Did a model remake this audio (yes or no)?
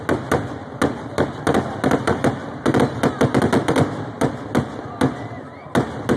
no